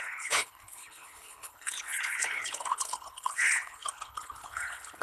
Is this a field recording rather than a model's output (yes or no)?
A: no